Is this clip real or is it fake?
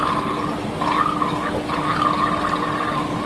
real